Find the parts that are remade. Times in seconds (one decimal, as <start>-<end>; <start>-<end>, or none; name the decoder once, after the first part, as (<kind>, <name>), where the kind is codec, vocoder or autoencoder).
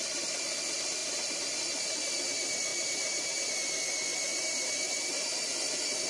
1.0-1.6 (vocoder, BigVGAN v2); 2.7-3.5; 4.3-4.8